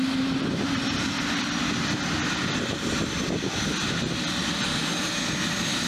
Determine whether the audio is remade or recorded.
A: recorded